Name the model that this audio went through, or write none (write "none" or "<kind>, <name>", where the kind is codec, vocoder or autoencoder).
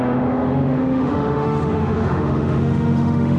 autoencoder, DAC-VAE